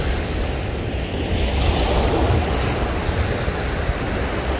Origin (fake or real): real